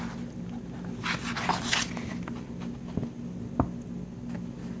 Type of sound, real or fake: real